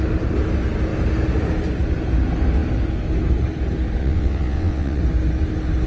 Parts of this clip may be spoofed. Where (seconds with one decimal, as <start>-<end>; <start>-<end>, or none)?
4.0-5.0